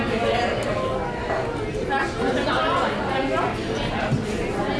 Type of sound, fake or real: real